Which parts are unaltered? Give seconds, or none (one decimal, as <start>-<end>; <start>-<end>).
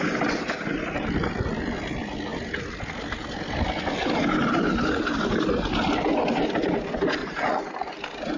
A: 0.0-7.2; 7.7-8.4